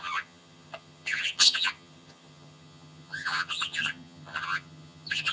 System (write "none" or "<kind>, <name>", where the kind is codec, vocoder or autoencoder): vocoder, HiFi-GAN